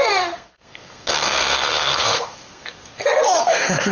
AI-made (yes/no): yes